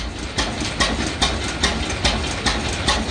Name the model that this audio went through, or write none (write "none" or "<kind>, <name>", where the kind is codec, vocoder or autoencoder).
none